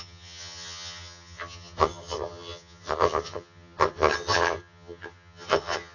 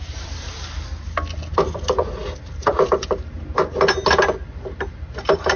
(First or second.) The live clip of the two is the second